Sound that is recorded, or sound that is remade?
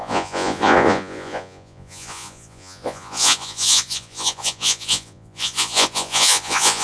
remade